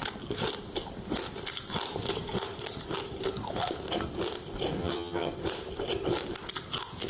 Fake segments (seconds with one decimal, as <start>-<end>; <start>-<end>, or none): 4.8-5.3